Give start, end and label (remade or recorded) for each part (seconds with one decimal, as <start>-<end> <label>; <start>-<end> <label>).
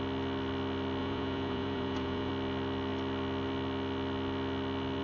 0.0-1.0 recorded; 1.0-2.3 remade; 2.3-5.0 recorded